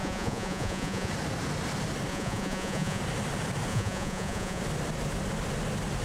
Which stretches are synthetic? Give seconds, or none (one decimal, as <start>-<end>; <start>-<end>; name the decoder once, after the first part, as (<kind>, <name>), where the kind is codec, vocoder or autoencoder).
0.0-1.1 (vocoder, Vocos); 2.1-3.0; 3.7-4.6